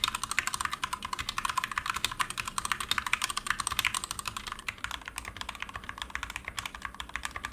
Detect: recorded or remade recorded